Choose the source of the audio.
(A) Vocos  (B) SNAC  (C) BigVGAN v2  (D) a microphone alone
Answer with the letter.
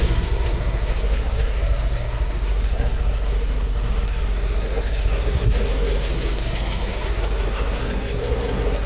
B